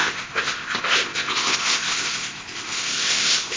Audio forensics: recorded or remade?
remade